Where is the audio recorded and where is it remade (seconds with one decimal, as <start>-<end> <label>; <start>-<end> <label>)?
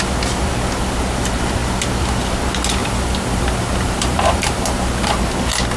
0.0-2.8 recorded; 2.8-5.2 remade; 5.2-5.8 recorded